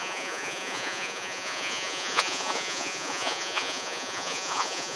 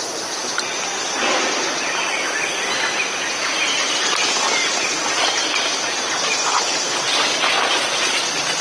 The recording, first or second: second